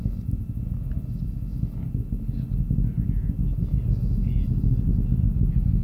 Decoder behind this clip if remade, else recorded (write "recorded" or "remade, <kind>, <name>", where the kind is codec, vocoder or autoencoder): recorded